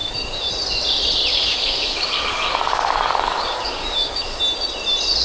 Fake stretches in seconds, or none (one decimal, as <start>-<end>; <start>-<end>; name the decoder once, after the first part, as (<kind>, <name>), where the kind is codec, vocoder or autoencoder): 0.0-0.5 (codec, DAC); 1.3-4.4